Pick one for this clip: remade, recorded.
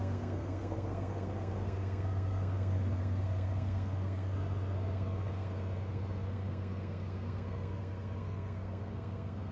remade